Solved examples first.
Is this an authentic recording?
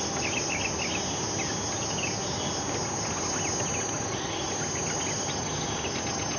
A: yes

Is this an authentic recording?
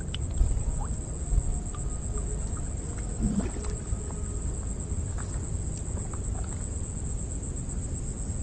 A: yes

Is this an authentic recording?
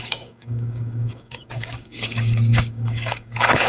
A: no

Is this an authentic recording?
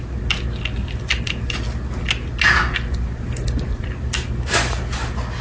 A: yes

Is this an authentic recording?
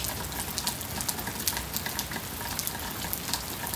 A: yes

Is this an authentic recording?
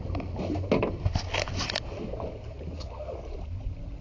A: yes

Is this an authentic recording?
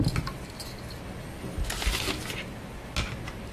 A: yes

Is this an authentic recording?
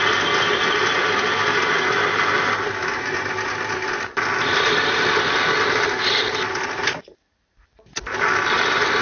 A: yes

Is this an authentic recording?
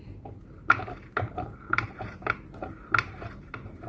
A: yes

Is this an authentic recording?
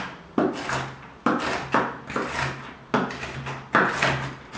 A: yes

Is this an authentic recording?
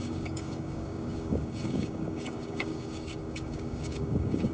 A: no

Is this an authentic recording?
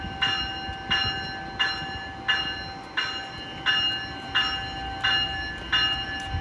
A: yes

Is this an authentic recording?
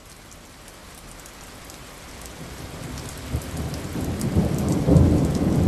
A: yes